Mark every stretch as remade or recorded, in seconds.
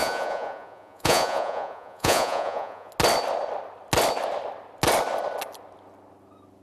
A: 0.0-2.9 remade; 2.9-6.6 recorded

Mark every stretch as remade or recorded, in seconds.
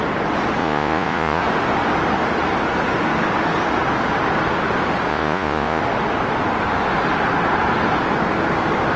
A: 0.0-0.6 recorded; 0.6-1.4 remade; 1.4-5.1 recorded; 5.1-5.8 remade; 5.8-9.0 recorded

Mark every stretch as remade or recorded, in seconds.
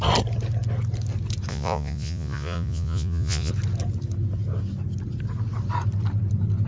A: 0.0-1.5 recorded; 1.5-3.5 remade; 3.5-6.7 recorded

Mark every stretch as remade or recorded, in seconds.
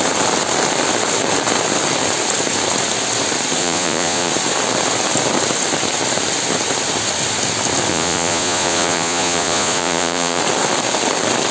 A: 0.0-3.6 recorded; 3.6-4.3 remade; 4.3-7.9 recorded; 7.9-10.4 remade; 10.4-11.5 recorded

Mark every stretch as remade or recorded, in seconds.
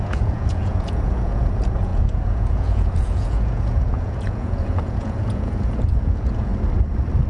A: 0.0-6.5 remade; 6.5-7.3 recorded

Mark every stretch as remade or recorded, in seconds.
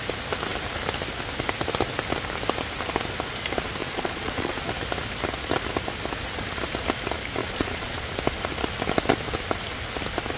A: 0.0-3.8 recorded; 3.8-4.7 remade; 4.7-7.4 recorded; 7.4-8.2 remade; 8.2-10.4 recorded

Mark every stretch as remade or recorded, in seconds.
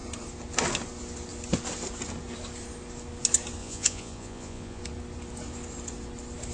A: 0.0-3.6 recorded; 3.6-4.8 remade; 4.8-6.5 recorded